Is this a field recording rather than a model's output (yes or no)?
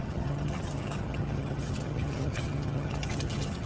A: no